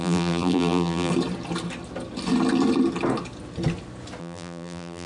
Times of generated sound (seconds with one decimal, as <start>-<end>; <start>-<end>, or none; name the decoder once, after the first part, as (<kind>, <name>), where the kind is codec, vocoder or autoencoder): 0.0-1.1 (vocoder, BigVGAN v2); 4.2-5.1